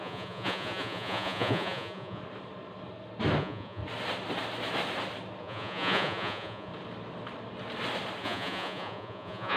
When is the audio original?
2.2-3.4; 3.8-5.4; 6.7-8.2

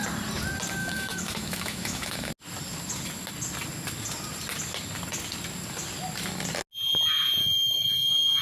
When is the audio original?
0.0-0.8; 2.3-7.4